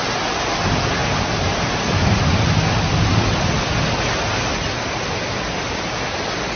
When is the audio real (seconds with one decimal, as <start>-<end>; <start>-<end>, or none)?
0.0-6.6